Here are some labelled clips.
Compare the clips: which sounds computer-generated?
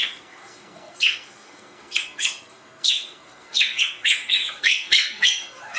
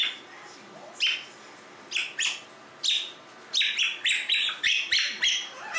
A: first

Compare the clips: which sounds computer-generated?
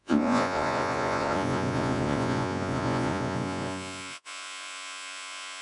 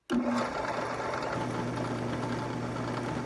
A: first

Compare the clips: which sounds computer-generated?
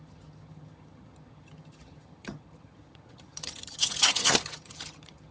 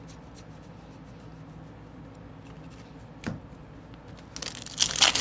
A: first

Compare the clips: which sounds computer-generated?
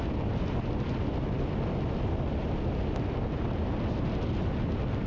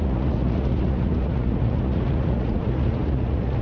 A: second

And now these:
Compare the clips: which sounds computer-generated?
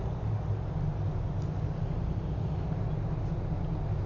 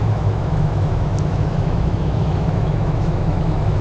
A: second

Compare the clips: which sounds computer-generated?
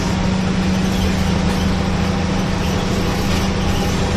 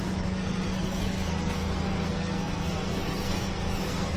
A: second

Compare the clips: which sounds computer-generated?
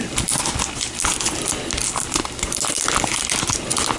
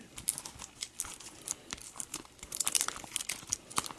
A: second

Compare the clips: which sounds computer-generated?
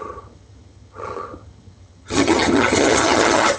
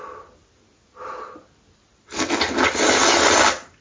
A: first